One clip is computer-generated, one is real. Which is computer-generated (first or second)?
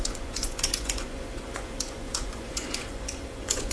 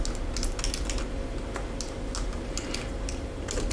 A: first